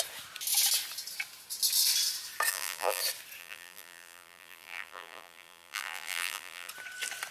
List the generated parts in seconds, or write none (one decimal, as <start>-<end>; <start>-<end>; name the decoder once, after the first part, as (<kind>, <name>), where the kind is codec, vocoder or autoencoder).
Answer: 2.5-3.0 (vocoder, BigVGAN v2); 3.4-6.7